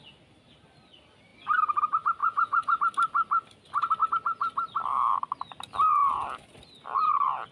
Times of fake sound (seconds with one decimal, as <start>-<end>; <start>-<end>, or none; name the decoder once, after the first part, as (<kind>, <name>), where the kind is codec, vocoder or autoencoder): 2.2-2.8 (vocoder, Vocos)